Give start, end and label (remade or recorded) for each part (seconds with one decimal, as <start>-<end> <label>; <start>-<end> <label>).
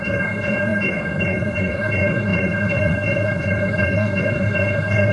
0.0-5.1 remade